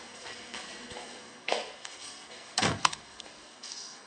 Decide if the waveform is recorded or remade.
remade